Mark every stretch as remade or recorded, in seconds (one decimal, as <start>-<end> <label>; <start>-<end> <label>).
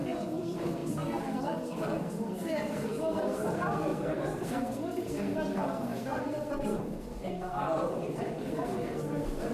0.0-9.5 remade